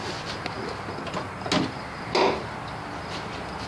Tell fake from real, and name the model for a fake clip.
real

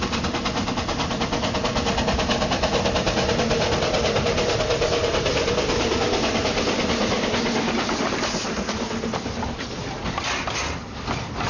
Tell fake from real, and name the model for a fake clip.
real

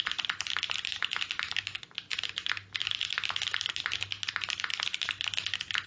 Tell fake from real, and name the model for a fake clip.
real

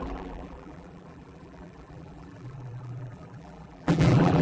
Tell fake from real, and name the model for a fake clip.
fake, vocoder, BigVGAN v2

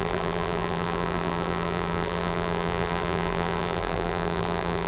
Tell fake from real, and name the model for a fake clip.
fake, vocoder, BigVGAN v2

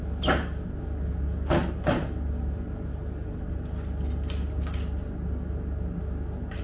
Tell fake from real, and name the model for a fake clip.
real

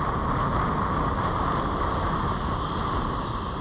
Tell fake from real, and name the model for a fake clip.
real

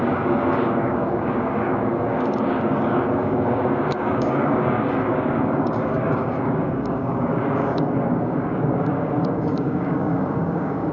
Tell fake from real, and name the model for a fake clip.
fake, codec, DAC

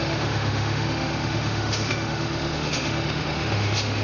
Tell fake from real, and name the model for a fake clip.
fake, autoencoder, DAC-VAE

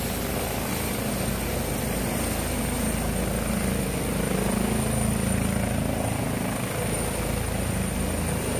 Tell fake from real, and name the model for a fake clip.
real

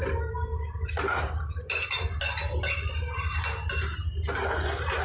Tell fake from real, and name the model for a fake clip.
real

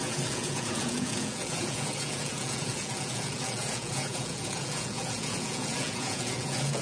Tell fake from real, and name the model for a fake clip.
fake, vocoder, Vocos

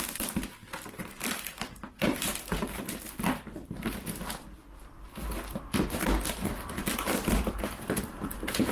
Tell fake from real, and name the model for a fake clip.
real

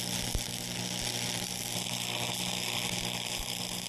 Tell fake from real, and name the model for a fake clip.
real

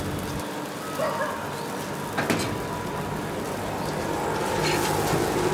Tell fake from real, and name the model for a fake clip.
real